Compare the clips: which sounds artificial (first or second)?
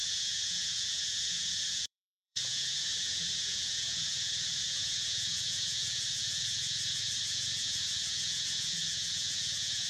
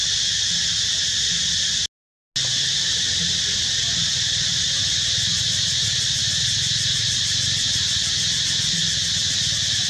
first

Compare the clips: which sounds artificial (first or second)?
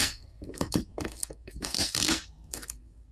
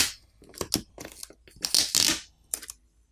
first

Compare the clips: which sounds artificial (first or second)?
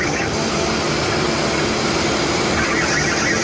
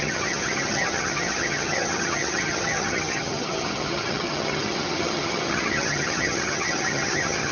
second